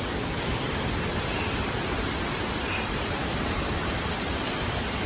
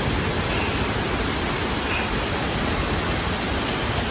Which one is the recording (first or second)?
second